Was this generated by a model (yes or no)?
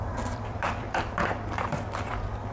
yes